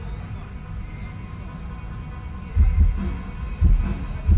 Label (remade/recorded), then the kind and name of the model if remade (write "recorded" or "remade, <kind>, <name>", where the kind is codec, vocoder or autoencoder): recorded